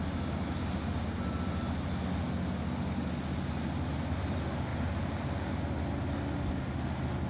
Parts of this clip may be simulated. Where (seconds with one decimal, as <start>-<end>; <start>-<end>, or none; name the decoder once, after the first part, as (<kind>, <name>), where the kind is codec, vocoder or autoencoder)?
none